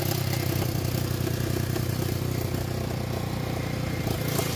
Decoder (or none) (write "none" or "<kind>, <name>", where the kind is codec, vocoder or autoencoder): none